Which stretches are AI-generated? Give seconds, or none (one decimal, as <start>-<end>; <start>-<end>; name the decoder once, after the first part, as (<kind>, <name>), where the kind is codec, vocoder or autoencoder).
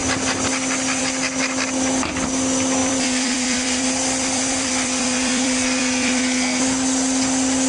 2.8-6.2 (vocoder, BigVGAN v2)